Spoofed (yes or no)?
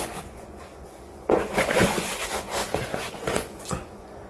yes